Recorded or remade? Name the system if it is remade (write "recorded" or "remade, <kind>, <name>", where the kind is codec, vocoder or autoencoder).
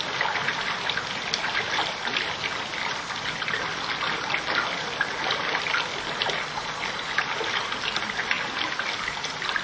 recorded